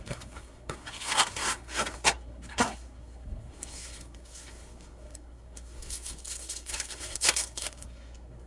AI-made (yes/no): yes